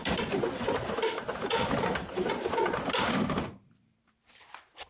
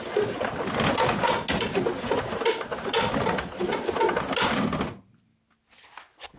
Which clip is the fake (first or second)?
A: first